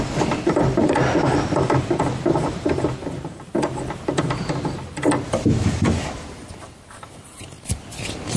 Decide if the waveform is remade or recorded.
recorded